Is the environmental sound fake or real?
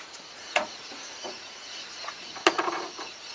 fake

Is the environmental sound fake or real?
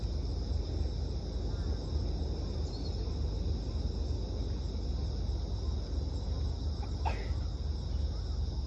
real